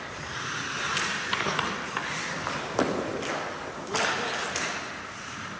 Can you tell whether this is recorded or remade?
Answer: recorded